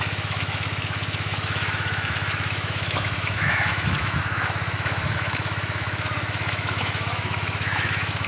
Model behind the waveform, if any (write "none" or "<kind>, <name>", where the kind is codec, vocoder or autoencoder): autoencoder, DAC-VAE